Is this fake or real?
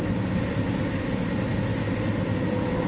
real